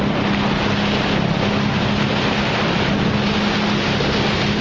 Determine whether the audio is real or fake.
real